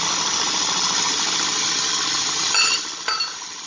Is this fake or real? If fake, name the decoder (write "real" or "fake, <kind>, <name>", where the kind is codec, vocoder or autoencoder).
real